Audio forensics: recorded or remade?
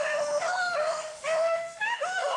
remade